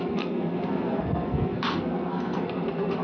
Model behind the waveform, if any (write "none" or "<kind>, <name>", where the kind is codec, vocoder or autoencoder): codec, SNAC